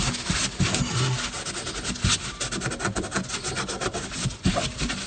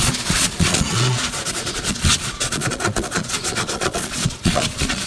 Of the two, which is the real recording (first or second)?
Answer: first